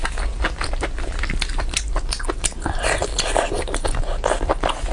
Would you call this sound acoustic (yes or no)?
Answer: yes